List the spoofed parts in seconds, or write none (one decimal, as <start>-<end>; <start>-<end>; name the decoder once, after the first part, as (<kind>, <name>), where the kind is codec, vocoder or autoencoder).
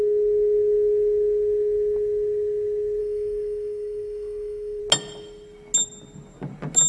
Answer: 3.0-4.8 (codec, DAC)